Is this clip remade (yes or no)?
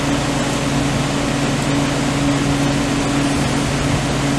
no